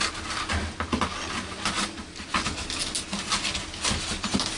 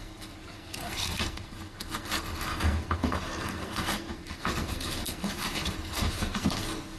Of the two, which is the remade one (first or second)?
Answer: second